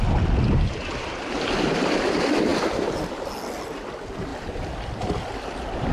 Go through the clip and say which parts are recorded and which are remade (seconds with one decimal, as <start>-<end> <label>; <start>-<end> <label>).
0.0-5.9 recorded